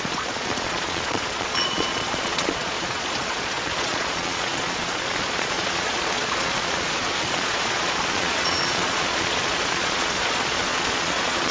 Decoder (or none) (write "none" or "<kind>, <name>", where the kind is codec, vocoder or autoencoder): vocoder, Vocos